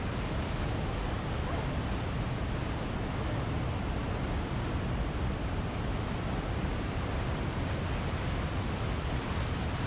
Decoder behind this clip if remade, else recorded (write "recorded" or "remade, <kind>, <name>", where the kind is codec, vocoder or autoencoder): recorded